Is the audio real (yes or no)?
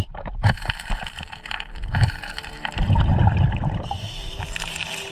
no